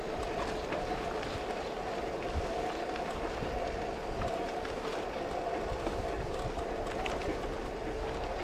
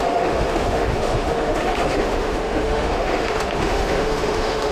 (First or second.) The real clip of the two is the first